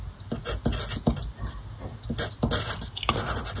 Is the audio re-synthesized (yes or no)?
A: no